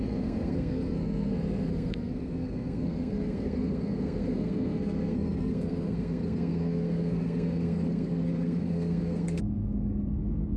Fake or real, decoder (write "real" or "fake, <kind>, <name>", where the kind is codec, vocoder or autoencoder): fake, codec, SNAC